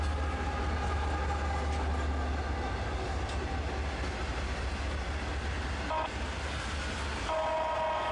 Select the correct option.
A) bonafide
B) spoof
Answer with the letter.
A